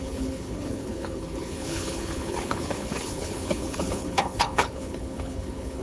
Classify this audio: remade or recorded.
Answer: remade